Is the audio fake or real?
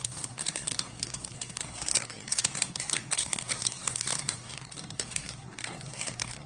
fake